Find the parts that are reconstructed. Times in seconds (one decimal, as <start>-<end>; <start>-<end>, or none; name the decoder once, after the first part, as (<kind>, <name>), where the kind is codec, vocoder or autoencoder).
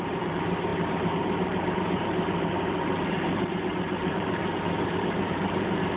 0.0-4.4 (vocoder, BigVGAN v2); 5.0-6.0